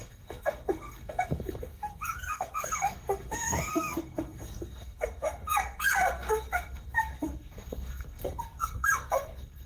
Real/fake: fake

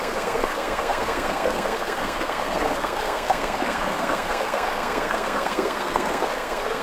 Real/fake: fake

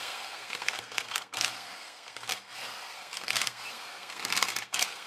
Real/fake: fake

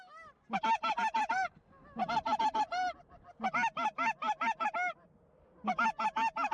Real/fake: real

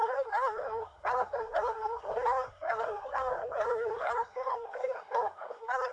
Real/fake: fake